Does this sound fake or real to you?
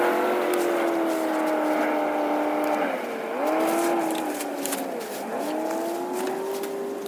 real